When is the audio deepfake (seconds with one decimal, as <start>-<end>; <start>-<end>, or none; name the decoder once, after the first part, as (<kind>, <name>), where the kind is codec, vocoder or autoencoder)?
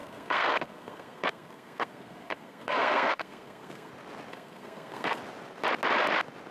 0.0-3.9 (codec, SNAC); 4.3-5.2